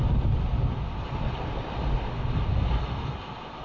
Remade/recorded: remade